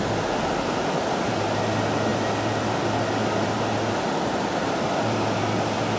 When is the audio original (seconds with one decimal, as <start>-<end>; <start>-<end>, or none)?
0.0-6.0